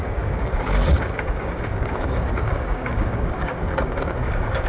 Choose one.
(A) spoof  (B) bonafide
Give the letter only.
A